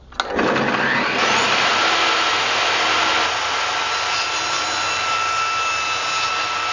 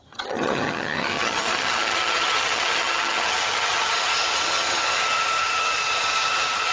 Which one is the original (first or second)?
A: first